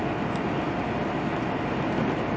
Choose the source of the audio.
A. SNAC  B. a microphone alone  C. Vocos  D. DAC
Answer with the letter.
B